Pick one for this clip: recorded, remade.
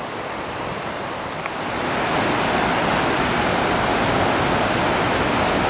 recorded